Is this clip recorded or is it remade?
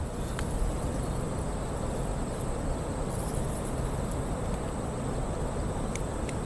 recorded